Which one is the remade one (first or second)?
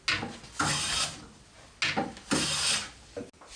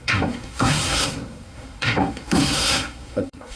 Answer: second